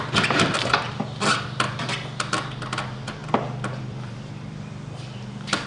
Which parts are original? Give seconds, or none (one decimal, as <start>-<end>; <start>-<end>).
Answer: 3.2-3.8